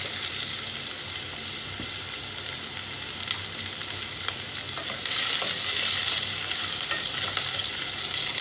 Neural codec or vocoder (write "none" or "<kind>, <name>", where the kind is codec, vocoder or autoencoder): none